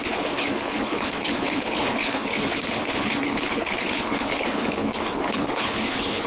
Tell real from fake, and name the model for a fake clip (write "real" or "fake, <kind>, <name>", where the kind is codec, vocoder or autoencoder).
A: fake, codec, HILCodec